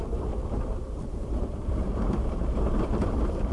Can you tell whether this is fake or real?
fake